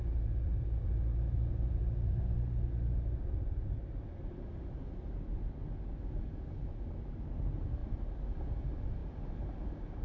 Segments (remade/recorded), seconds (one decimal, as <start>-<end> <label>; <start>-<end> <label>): 0.0-10.0 recorded